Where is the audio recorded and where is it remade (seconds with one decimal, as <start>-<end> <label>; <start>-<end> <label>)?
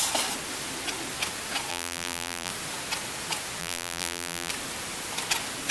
0.0-1.7 recorded; 1.7-2.5 remade; 2.5-3.6 recorded; 3.6-4.5 remade; 4.5-5.7 recorded